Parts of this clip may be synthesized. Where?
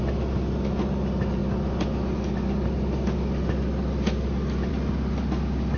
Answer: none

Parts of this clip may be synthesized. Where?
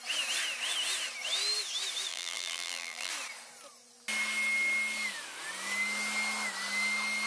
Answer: 2.1-3.1 (vocoder, BigVGAN v2)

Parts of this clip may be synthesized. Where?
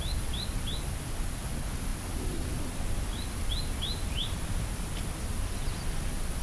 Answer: none